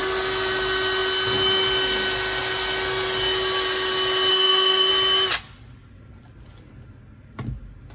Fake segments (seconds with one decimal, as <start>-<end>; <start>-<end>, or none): 4.3-4.9